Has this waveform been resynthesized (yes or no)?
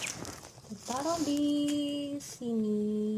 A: no